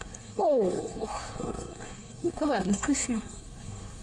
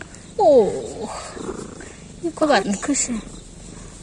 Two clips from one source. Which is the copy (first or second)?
first